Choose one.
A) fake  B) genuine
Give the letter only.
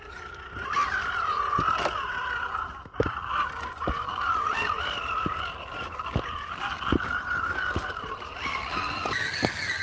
B